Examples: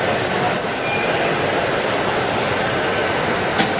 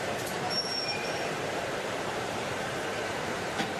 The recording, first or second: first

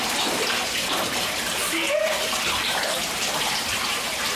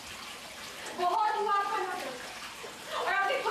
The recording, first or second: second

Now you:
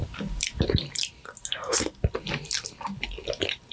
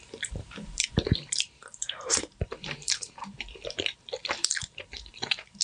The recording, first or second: first